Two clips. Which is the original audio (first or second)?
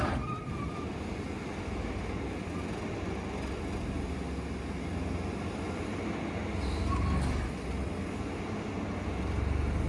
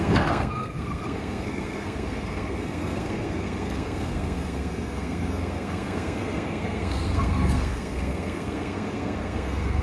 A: first